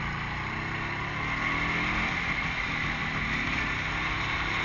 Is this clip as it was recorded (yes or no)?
yes